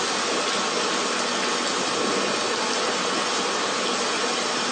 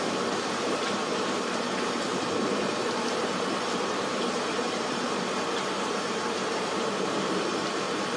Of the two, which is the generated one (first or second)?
second